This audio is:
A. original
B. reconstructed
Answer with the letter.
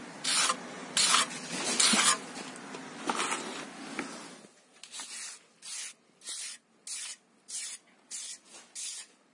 A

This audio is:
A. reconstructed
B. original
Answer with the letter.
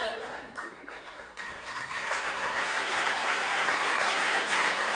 A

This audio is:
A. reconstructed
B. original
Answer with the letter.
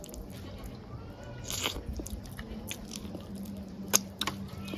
B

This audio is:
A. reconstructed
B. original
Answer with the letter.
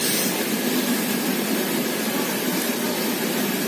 B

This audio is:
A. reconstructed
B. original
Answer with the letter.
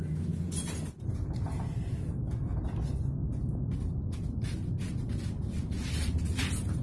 B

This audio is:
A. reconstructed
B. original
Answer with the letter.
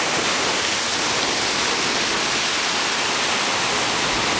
B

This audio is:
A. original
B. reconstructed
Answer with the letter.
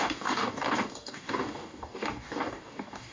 B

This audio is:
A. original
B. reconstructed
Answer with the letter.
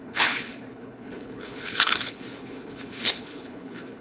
B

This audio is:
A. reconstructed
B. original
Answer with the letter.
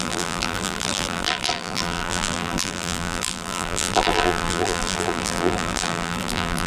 A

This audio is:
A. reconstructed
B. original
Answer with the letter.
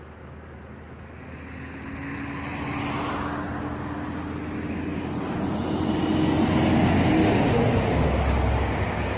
B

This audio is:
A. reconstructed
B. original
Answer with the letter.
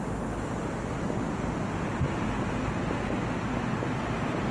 B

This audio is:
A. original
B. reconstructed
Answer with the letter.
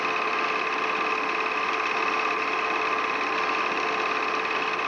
A